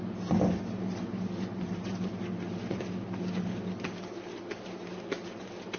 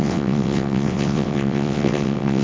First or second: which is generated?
second